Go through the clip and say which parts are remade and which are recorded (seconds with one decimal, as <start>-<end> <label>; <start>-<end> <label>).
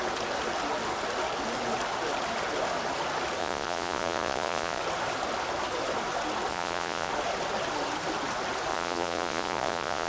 0.0-3.4 recorded; 3.4-4.8 remade; 4.8-6.5 recorded; 6.5-7.1 remade; 7.1-8.7 recorded; 8.7-10.1 remade